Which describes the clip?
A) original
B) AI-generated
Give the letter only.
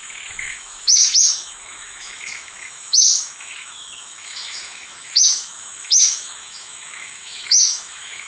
B